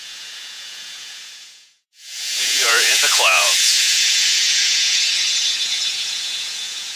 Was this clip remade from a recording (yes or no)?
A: yes